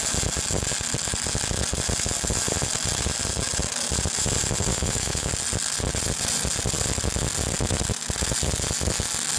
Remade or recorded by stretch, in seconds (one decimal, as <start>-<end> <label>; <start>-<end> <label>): 0.0-4.7 recorded; 4.7-5.3 remade; 5.3-9.4 recorded

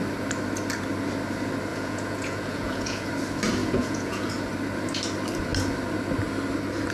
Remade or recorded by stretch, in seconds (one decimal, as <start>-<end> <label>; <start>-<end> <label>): 0.0-1.7 recorded; 1.7-3.1 remade; 3.1-3.6 recorded; 3.6-4.4 remade; 4.4-6.9 recorded

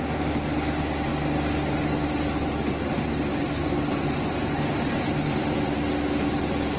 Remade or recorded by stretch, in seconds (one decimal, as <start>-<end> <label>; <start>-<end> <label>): 0.0-3.3 recorded; 3.3-5.7 remade; 5.7-6.8 recorded

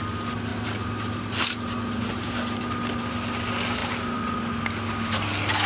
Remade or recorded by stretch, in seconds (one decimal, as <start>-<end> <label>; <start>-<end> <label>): 0.0-5.7 recorded

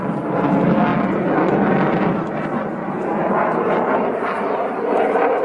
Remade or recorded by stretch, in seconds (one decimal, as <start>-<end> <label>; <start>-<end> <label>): 0.0-5.4 recorded

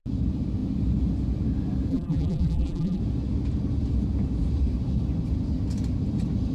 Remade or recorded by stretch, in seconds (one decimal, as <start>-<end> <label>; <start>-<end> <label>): 0.0-1.9 recorded; 1.9-3.0 remade; 3.0-6.5 recorded

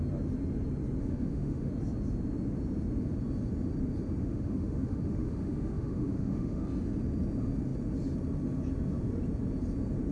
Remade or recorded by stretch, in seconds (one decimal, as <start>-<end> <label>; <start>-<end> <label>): 0.0-1.0 recorded; 1.0-1.7 remade; 1.7-4.2 recorded; 4.2-6.6 remade; 6.6-10.1 recorded

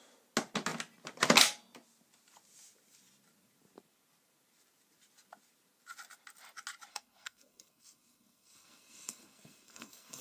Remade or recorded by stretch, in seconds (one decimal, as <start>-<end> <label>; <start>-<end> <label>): 0.0-6.9 recorded; 6.9-10.2 remade